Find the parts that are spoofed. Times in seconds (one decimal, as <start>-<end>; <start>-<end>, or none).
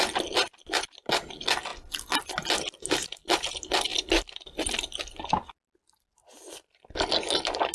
none